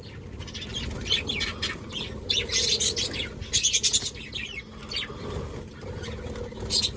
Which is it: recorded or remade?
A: recorded